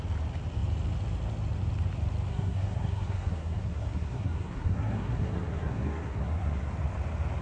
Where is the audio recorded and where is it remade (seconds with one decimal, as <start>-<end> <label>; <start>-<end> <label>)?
0.0-2.3 recorded; 2.3-6.7 remade; 6.7-7.4 recorded